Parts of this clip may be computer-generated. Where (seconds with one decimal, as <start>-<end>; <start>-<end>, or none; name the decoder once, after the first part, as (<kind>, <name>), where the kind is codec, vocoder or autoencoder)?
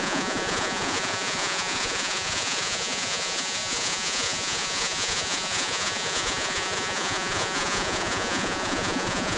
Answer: 0.0-9.4 (vocoder, Vocos)